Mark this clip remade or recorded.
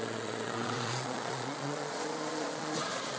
remade